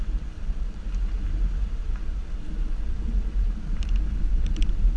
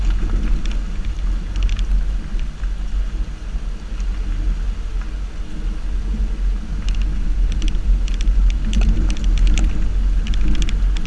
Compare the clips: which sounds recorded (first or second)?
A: second